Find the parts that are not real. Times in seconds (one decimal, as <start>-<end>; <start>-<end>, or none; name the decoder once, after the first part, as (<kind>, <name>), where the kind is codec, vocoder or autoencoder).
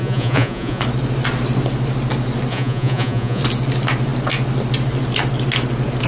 0.0-0.8 (vocoder, Vocos); 2.5-3.4